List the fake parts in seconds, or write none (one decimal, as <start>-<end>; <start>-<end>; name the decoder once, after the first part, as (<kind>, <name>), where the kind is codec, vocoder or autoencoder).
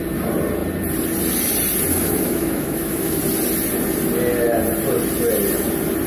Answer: 1.9-3.2 (autoencoder, DAC-VAE)